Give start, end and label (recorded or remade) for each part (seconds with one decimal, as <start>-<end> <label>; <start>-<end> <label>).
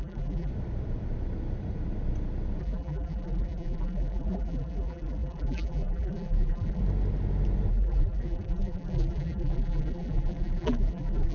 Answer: 0.0-0.5 remade; 0.5-2.6 recorded; 2.6-6.8 remade; 6.8-7.7 recorded; 7.7-11.3 remade